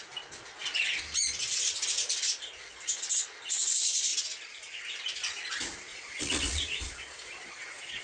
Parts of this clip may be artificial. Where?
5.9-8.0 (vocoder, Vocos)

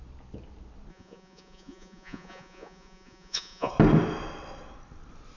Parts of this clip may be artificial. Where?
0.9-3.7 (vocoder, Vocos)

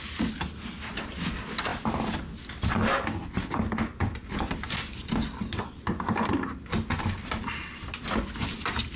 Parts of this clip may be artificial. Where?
none

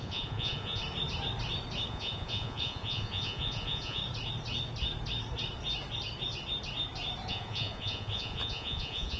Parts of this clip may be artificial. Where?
0.0-0.8 (vocoder, Vocos); 1.9-4.0; 7.3-9.2